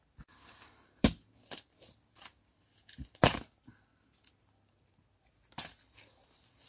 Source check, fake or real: real